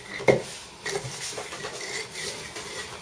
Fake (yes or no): no